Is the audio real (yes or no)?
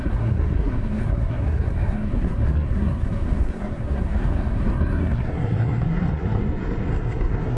no